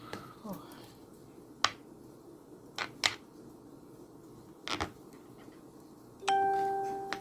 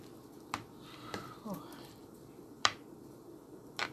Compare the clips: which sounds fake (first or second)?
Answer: second